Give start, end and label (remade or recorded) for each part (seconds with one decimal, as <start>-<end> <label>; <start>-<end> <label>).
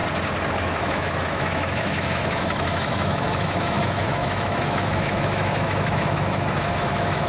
0.0-0.5 recorded; 0.5-7.3 remade